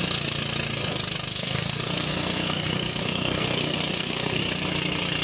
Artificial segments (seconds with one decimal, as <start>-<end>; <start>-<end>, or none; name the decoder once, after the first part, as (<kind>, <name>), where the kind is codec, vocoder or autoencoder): 1.3-4.4 (codec, SNAC)